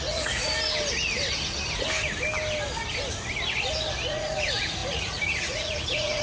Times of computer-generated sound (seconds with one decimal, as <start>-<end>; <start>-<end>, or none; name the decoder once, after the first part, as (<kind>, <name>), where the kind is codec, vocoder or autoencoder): 0.0-0.4 (vocoder, Vocos); 4.1-6.2